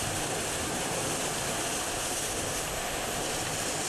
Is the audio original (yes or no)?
yes